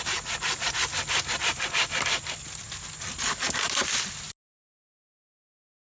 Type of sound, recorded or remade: recorded